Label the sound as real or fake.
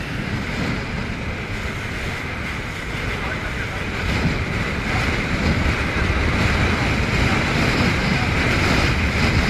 real